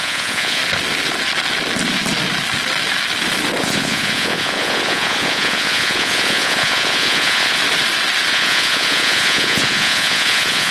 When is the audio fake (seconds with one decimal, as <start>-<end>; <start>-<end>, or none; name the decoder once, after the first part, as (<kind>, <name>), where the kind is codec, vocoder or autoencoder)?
0.0-0.6 (vocoder, Vocos); 3.6-7.6; 8.3-10.7

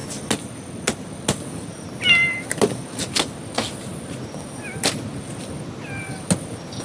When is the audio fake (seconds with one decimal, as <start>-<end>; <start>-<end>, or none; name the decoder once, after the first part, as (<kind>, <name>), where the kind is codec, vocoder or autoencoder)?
none

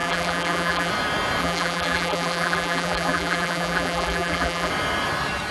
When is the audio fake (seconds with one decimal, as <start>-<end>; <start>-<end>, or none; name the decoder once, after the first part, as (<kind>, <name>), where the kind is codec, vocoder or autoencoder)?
0.0-0.9 (vocoder, BigVGAN v2); 1.4-4.7

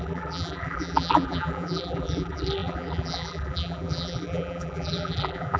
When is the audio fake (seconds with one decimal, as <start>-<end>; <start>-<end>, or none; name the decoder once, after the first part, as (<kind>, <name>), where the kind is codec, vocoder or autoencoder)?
0.0-5.6 (vocoder, BigVGAN v2)